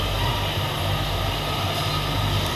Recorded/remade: recorded